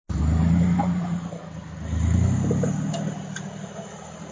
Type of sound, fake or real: real